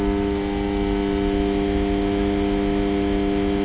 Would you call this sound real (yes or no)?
yes